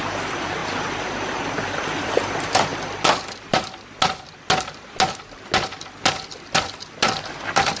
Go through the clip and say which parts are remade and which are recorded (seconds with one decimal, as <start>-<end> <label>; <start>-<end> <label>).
0.0-7.8 recorded